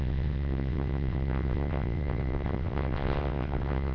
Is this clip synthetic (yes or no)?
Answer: yes